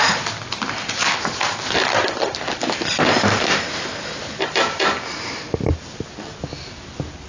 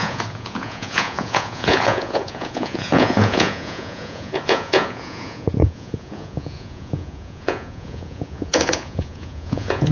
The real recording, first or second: first